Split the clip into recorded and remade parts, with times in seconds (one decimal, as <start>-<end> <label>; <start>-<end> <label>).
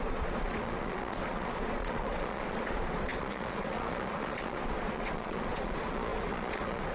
0.0-6.9 remade